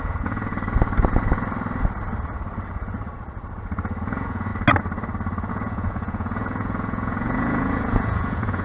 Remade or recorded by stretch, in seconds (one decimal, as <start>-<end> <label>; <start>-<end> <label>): 0.0-0.5 remade; 0.5-4.0 recorded; 4.0-4.5 remade; 4.5-5.5 recorded; 5.5-8.6 remade